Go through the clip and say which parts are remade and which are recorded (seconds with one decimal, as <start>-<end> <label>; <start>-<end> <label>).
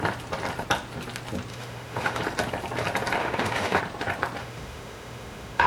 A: 0.0-1.5 recorded; 1.5-2.2 remade; 2.2-3.2 recorded; 3.2-3.8 remade; 3.8-4.4 recorded; 4.4-5.7 remade